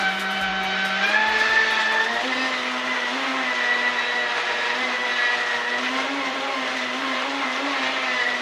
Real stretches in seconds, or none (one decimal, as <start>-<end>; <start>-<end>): 0.5-4.5; 5.1-5.8